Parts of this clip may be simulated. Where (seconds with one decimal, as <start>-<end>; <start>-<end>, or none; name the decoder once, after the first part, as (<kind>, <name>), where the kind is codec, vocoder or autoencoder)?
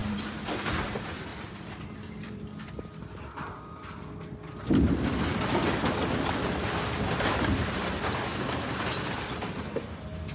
0.0-0.7 (vocoder, BigVGAN v2); 1.3-2.4